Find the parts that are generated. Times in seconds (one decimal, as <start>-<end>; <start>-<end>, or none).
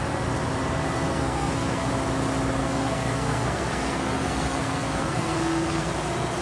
1.1-1.9; 2.6-5.9